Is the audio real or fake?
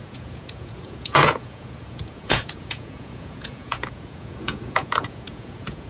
fake